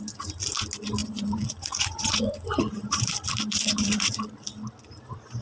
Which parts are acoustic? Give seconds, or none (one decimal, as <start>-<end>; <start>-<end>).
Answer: 0.0-1.0; 3.1-3.5; 4.1-5.4